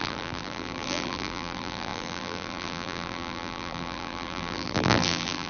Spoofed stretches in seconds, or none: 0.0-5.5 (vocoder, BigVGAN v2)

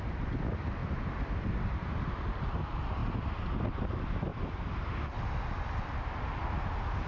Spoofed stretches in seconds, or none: 0.8-2.6 (vocoder, BigVGAN v2)

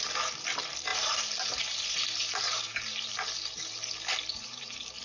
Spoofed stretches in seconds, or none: 0.9-3.8 (vocoder, BigVGAN v2); 4.3-5.0